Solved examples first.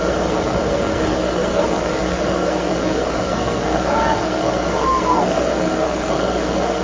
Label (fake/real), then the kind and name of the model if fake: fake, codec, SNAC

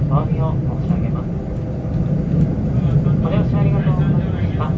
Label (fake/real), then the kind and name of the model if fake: real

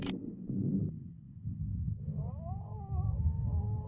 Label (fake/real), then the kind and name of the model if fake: fake, codec, DAC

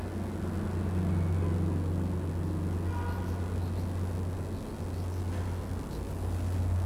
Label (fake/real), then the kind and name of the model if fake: real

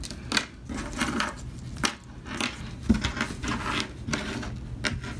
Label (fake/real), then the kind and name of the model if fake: real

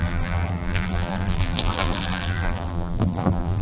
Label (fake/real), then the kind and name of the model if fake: fake, vocoder, BigVGAN v2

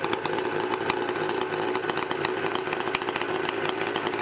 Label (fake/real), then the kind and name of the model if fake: real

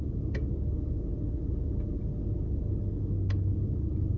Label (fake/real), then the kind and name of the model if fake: real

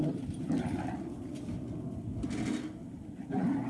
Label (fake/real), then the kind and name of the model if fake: real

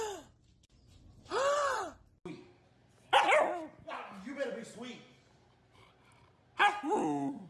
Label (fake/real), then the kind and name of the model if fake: real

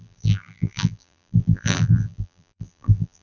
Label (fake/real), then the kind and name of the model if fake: fake, vocoder, BigVGAN v2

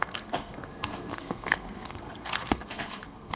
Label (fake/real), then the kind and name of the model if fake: fake, codec, SNAC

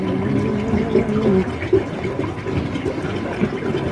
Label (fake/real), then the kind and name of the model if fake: real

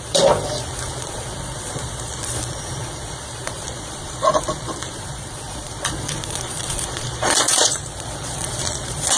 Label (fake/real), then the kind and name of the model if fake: fake, vocoder, Vocos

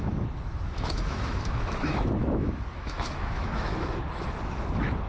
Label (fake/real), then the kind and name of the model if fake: fake, autoencoder, DAC-VAE